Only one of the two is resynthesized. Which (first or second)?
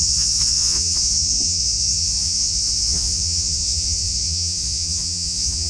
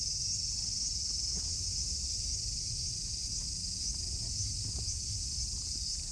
first